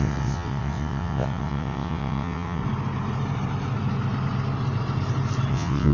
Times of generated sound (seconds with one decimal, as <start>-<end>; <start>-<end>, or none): 0.0-2.6; 5.5-5.9